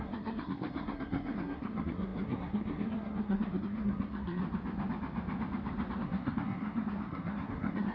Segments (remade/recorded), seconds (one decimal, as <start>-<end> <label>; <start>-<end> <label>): 0.0-4.4 remade; 4.4-6.0 recorded; 6.0-7.9 remade